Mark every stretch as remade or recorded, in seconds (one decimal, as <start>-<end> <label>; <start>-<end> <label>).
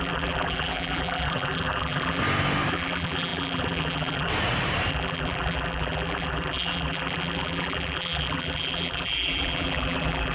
0.0-2.2 remade; 2.2-2.7 recorded; 2.7-4.3 remade; 4.3-4.9 recorded; 4.9-10.3 remade